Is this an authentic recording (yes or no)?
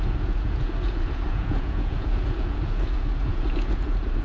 no